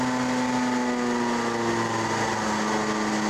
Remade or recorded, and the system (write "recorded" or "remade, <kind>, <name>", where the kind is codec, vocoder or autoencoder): recorded